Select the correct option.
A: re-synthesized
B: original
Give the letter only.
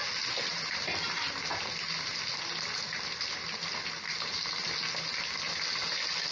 B